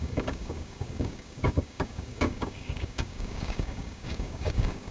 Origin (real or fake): fake